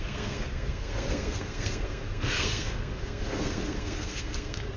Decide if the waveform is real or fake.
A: fake